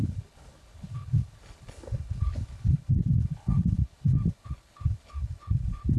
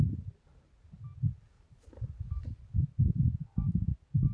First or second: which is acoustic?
second